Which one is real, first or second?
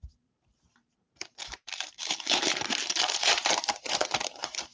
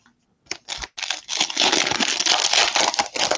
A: second